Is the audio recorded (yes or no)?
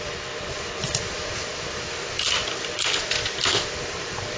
no